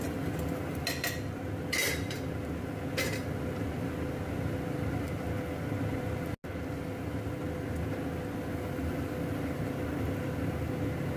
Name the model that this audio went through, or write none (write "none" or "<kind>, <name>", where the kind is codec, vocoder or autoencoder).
none